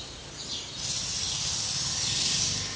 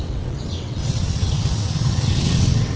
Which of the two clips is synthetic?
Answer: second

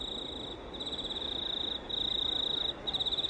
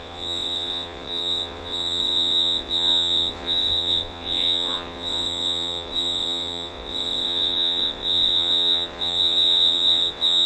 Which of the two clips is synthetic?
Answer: second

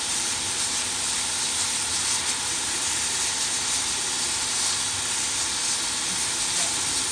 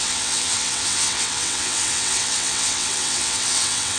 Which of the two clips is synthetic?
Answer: second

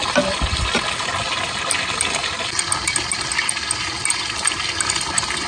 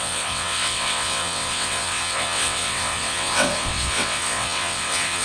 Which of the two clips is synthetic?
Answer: second